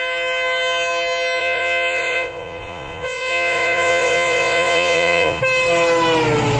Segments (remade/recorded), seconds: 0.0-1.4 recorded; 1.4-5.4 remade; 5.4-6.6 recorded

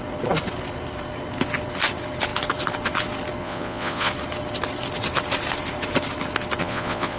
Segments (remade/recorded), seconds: 0.0-3.4 recorded; 3.4-4.1 remade; 4.1-6.6 recorded; 6.6-7.2 remade

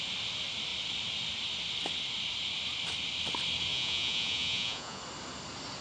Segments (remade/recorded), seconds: 0.0-3.7 recorded; 3.7-5.0 remade; 5.0-5.8 recorded

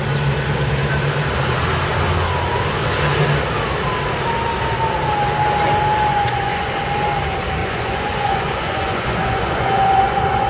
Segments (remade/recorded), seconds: 0.0-6.1 recorded; 6.1-6.7 remade; 6.7-7.6 recorded; 7.6-10.5 remade

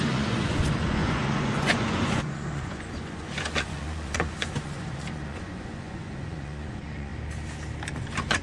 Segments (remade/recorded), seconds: 0.0-7.1 remade; 7.1-7.9 recorded; 7.9-8.4 remade

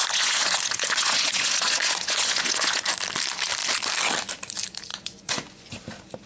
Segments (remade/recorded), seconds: 0.0-2.9 remade; 2.9-4.9 recorded; 4.9-5.7 remade; 5.7-6.3 recorded

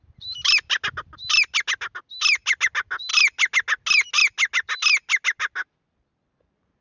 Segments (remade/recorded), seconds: 0.0-6.8 recorded

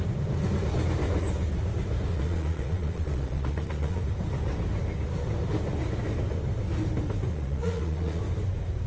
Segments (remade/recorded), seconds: 0.0-2.1 recorded; 2.1-4.0 remade; 4.0-7.3 recorded; 7.3-8.2 remade; 8.2-8.9 recorded